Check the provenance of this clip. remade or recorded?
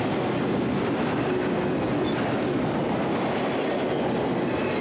recorded